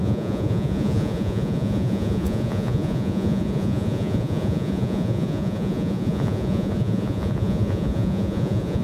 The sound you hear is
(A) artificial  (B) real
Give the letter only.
A